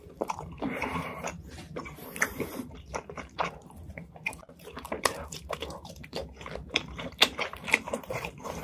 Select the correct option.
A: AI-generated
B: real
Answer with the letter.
A